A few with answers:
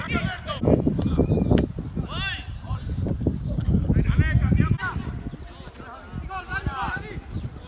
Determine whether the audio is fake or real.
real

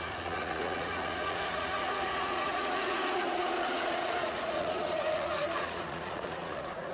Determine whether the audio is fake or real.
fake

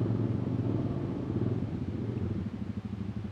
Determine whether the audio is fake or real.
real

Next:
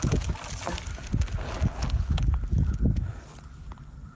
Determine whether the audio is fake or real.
real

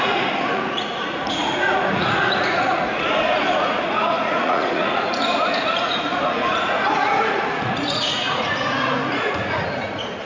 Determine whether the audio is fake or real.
fake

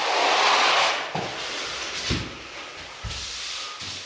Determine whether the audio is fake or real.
real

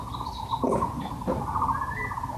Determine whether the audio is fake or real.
real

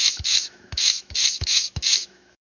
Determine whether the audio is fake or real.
fake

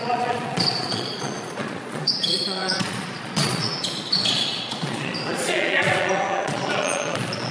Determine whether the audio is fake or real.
fake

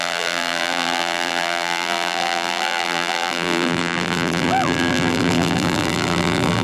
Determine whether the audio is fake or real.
fake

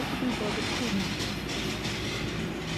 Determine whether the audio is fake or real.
real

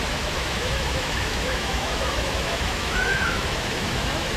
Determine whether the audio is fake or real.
fake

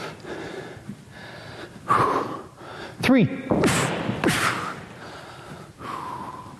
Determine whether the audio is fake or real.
real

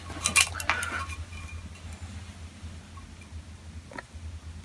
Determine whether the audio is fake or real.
real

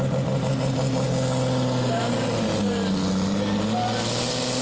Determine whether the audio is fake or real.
real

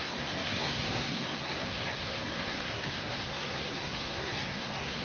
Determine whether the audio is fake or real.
fake